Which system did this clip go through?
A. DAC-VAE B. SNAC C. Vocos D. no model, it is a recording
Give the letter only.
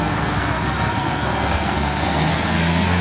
B